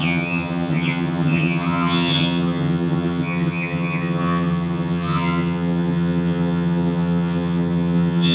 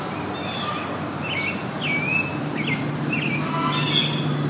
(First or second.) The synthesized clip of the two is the first